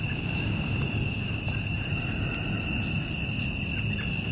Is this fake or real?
real